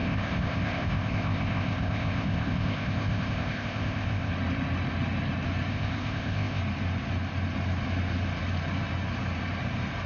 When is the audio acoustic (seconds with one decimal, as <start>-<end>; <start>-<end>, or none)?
4.3-5.7; 6.6-10.1